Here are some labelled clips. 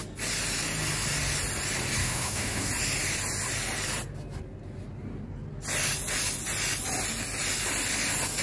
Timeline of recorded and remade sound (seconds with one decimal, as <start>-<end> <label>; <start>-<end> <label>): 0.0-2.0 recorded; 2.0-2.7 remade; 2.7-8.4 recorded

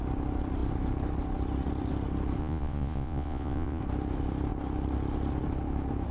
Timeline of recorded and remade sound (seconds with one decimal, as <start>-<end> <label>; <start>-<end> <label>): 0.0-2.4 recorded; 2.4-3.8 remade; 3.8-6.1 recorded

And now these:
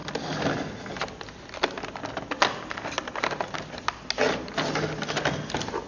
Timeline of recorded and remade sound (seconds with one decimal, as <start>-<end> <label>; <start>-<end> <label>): 0.0-5.9 recorded

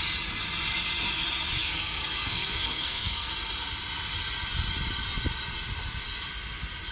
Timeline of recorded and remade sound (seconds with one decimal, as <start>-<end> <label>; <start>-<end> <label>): 0.0-1.6 recorded; 1.6-3.3 remade; 3.3-6.9 recorded

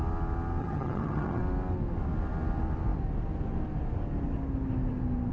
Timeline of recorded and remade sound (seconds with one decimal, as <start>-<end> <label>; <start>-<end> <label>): 0.0-0.6 recorded; 0.6-1.4 remade; 1.4-5.3 recorded

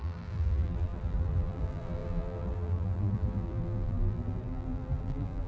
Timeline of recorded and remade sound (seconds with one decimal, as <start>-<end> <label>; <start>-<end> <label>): 0.0-5.5 remade

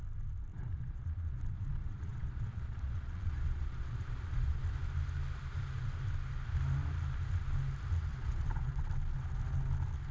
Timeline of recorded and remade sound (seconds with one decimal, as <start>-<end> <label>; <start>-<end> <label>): 0.0-0.5 recorded; 0.5-4.6 remade; 4.6-8.1 recorded; 8.1-8.8 remade; 8.8-10.1 recorded

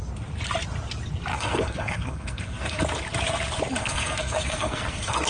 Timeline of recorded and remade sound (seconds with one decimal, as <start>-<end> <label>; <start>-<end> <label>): 0.0-1.3 recorded; 1.3-2.8 remade; 2.8-3.8 recorded; 3.8-5.3 remade